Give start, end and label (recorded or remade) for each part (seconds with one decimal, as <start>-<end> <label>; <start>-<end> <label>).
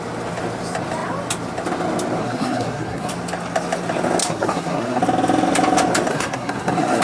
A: 0.0-2.2 recorded; 2.2-3.1 remade; 3.1-4.2 recorded; 4.2-5.0 remade; 5.0-6.1 recorded; 6.1-7.0 remade